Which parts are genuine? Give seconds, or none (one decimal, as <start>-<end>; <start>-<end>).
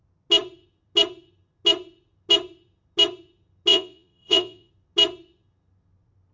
0.0-3.7; 4.7-6.3